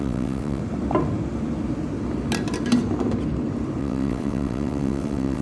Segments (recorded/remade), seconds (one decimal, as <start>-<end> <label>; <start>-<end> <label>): 0.0-0.6 remade; 0.6-3.8 recorded; 3.8-5.4 remade